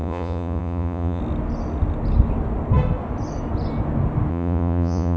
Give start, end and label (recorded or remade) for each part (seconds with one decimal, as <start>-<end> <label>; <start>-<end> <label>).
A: 0.0-1.2 remade; 1.2-4.3 recorded; 4.3-5.2 remade